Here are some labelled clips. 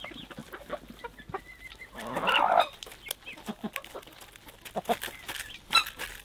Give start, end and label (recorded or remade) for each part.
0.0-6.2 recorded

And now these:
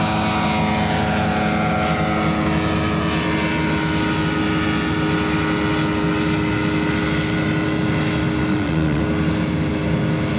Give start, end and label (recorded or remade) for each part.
0.0-8.5 recorded; 8.5-9.0 remade; 9.0-10.4 recorded

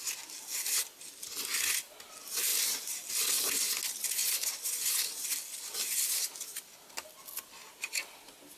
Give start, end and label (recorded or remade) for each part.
0.0-8.6 recorded

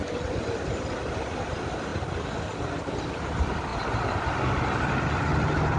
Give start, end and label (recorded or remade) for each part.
0.0-5.8 recorded